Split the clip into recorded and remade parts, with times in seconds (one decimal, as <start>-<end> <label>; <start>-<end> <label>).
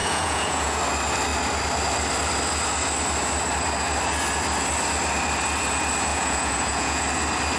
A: 0.0-0.8 remade; 0.8-6.1 recorded; 6.1-7.0 remade; 7.0-7.6 recorded